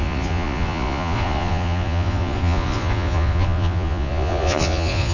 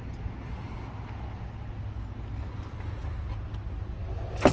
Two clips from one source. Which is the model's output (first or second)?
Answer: first